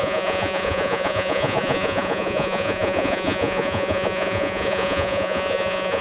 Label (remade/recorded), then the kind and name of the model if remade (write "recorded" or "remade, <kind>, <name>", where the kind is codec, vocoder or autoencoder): remade, vocoder, Vocos